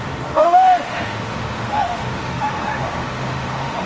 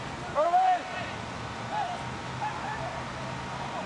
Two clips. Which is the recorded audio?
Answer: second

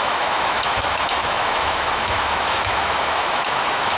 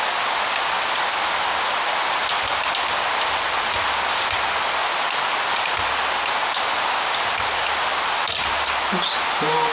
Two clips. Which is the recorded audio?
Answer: second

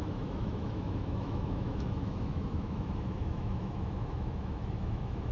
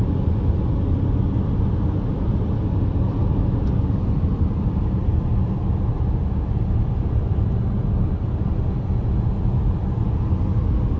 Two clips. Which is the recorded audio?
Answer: second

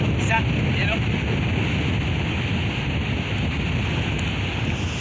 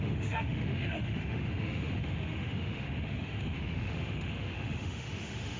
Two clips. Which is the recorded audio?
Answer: first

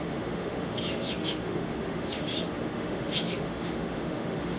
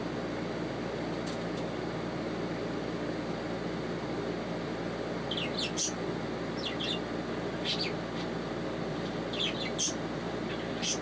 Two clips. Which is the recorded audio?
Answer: second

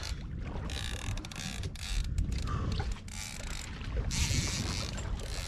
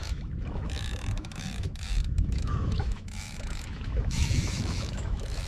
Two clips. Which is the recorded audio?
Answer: first